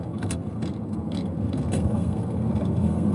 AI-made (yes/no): yes